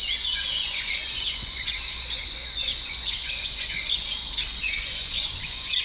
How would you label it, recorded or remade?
remade